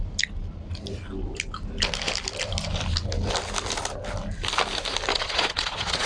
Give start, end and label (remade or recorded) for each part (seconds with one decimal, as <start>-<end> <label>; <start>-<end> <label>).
0.0-5.1 recorded; 5.1-6.1 remade